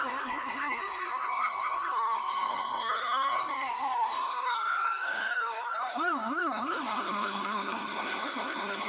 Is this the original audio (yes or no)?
no